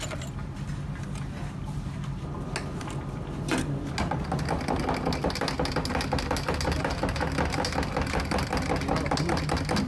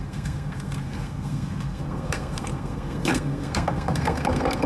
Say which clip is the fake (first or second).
second